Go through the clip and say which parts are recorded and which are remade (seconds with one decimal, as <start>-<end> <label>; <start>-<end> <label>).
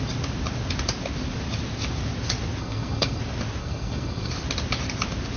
0.0-2.6 recorded; 2.6-3.2 remade; 3.2-3.6 recorded; 3.6-4.3 remade; 4.3-5.4 recorded